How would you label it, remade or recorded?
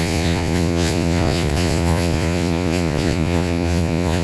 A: remade